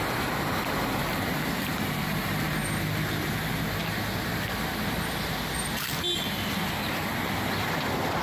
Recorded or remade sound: remade